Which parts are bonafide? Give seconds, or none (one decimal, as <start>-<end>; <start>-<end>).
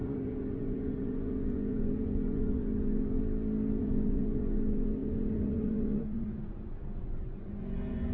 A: 3.2-3.8